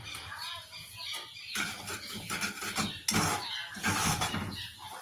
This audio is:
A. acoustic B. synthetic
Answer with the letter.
A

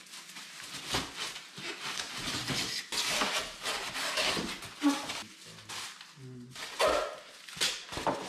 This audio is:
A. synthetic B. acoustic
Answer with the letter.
B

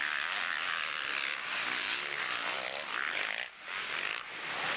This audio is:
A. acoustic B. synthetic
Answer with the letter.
A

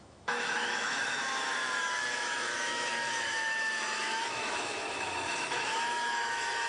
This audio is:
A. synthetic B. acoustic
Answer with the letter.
A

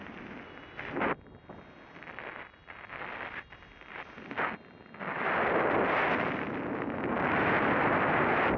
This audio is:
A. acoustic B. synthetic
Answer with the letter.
A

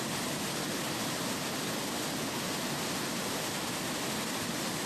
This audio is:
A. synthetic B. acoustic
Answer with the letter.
B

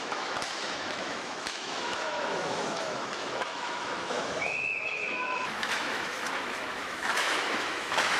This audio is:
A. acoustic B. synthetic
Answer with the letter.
B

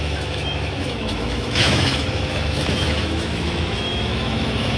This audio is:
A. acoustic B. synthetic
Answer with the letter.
B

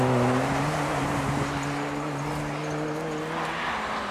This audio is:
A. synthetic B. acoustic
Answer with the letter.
B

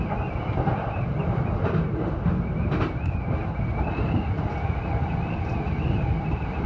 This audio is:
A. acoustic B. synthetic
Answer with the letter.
A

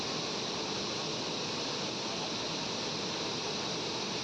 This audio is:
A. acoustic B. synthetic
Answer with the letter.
A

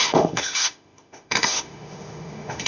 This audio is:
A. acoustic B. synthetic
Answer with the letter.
B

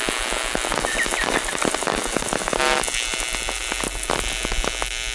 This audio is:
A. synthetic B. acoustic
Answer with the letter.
B